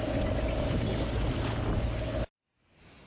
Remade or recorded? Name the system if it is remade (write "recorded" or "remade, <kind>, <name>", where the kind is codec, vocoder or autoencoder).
recorded